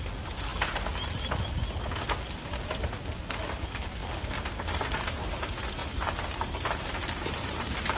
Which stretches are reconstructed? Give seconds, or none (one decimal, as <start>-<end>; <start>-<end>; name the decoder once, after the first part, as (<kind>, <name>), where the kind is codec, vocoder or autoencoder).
none